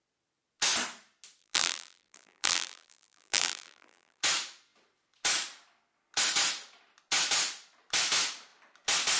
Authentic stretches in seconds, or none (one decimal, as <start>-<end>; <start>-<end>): 0.0-1.4; 4.2-9.2